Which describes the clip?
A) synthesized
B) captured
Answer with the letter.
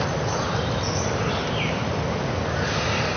B